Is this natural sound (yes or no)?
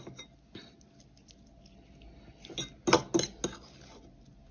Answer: yes